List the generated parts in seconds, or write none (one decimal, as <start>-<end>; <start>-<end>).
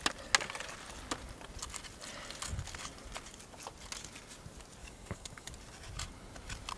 4.8-5.5